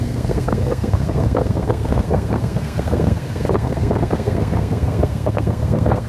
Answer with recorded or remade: remade